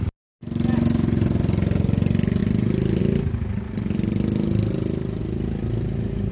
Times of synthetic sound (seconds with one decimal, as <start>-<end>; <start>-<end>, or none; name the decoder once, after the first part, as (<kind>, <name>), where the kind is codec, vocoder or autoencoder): none